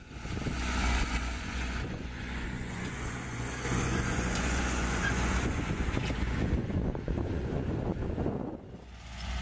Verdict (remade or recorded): remade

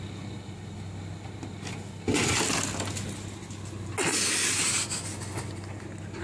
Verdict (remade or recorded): recorded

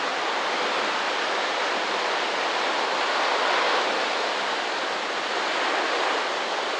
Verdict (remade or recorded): recorded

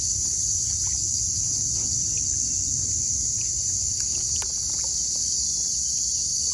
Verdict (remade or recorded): recorded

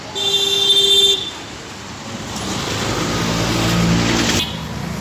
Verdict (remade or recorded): recorded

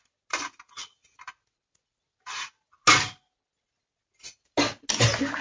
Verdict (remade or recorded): recorded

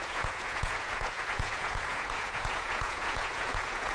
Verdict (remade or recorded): remade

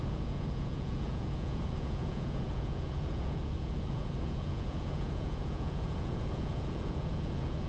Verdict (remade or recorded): remade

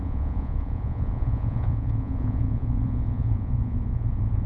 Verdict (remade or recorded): remade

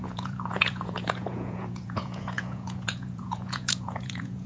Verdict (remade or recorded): remade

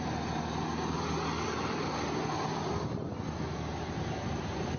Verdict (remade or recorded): recorded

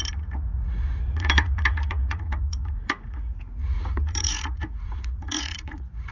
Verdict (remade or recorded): remade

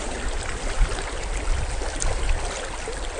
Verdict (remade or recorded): recorded